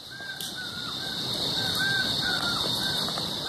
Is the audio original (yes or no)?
yes